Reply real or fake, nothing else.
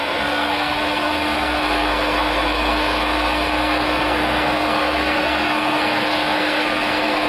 fake